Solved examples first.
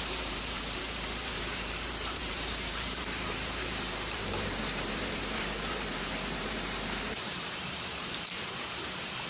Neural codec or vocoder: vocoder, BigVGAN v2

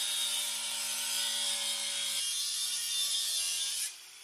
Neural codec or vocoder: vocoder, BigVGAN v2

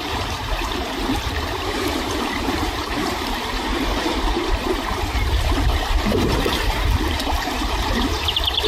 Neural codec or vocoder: vocoder, BigVGAN v2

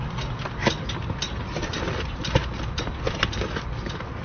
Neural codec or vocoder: none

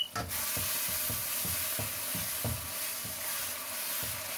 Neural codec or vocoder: none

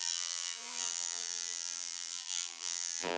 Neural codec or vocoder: vocoder, BigVGAN v2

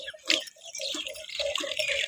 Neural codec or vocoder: none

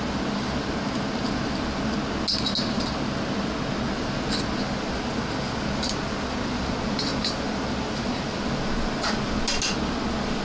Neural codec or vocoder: none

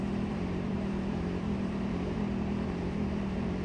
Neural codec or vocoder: vocoder, BigVGAN v2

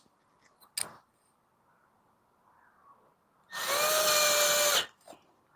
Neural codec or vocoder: none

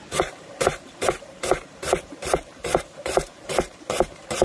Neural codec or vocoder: vocoder, BigVGAN v2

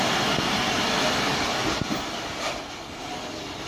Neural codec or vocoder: vocoder, BigVGAN v2